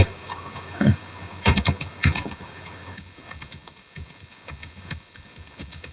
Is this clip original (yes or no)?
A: no